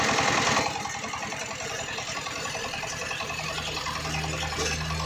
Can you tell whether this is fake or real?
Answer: real